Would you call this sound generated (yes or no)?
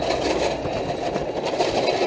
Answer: no